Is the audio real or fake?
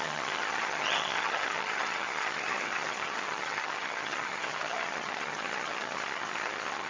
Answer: fake